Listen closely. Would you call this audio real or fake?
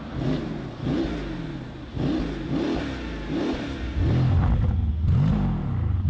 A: real